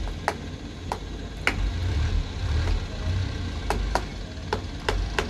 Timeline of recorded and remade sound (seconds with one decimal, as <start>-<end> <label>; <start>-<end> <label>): 0.0-5.3 recorded